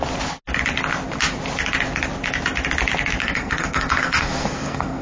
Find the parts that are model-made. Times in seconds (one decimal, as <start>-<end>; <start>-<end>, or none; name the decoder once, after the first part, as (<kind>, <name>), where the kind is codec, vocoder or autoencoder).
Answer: 3.2-5.0 (codec, SNAC)